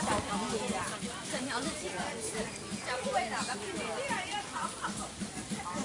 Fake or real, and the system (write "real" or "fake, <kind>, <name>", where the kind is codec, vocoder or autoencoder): fake, vocoder, BigVGAN v2